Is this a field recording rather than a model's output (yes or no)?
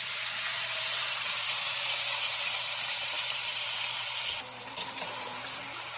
no